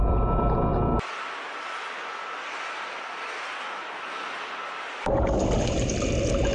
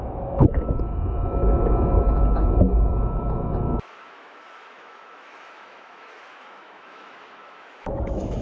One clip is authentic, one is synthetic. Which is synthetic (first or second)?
second